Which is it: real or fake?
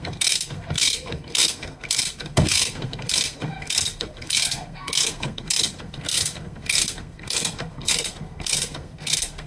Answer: fake